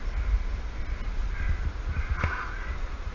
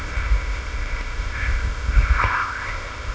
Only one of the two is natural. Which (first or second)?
first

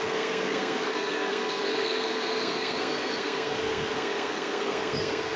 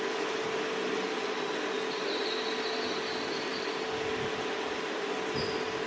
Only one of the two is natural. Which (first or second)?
second